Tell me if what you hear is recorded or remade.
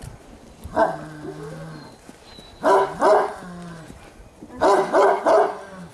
recorded